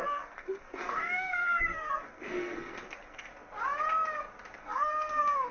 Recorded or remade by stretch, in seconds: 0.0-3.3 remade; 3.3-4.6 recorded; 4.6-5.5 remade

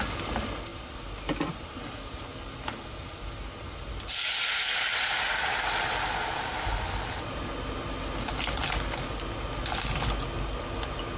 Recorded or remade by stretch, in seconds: 0.0-11.2 recorded

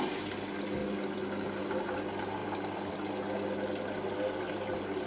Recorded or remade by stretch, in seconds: 0.0-5.1 recorded

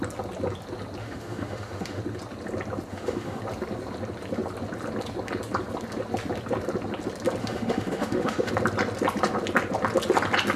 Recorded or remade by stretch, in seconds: 0.0-1.0 recorded; 1.0-2.0 remade; 2.0-2.9 recorded; 2.9-3.4 remade; 3.4-7.4 recorded; 7.4-8.5 remade; 8.5-10.6 recorded

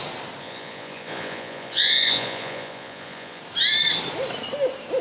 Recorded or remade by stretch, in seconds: 0.0-0.4 recorded; 0.4-3.4 remade; 3.4-5.0 recorded

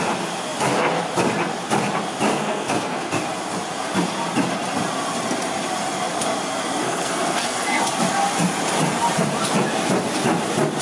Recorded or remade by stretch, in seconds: 0.0-2.3 recorded; 2.3-3.2 remade; 3.2-6.8 recorded; 6.8-7.8 remade; 7.8-10.8 recorded

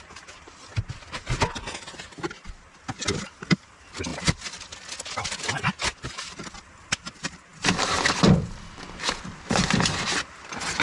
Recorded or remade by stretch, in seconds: 0.0-10.8 recorded